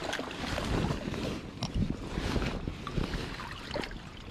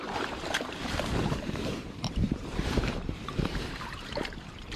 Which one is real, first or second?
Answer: first